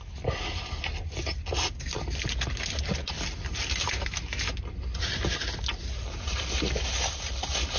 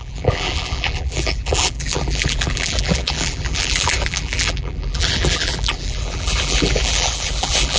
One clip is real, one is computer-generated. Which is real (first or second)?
first